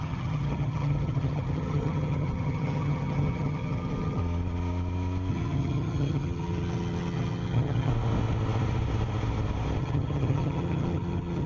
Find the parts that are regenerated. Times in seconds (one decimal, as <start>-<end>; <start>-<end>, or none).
0.0-4.2; 5.3-7.9; 9.8-11.5